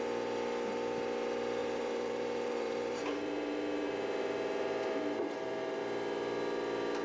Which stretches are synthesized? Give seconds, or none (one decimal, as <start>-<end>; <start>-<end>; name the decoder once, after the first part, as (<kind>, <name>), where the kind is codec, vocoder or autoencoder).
1.6-5.8 (vocoder, BigVGAN v2)